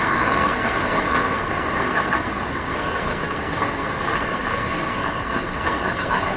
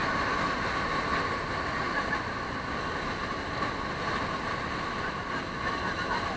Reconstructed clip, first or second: first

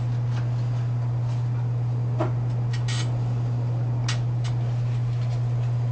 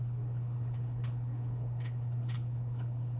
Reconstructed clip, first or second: second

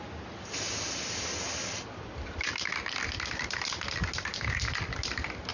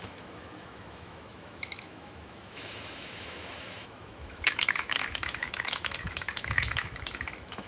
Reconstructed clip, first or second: second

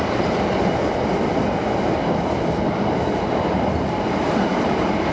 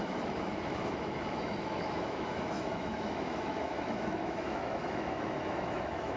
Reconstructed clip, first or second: second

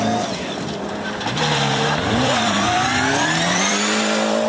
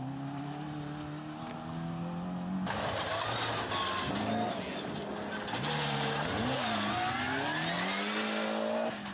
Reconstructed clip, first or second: first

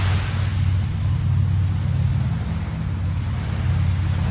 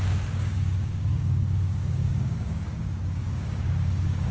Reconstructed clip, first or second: second